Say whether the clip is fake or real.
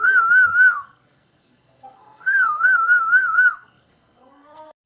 fake